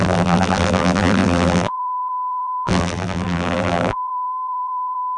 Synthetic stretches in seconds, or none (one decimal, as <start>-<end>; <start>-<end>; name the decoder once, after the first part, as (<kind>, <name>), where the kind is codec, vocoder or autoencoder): 0.0-5.2 (vocoder, BigVGAN v2)